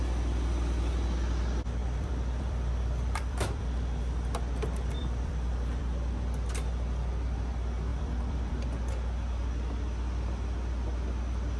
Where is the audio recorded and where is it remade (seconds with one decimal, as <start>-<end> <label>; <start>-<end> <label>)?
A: 0.0-1.8 recorded; 1.8-3.6 remade; 3.6-5.0 recorded; 5.0-5.8 remade; 5.8-7.9 recorded; 7.9-8.5 remade; 8.5-11.6 recorded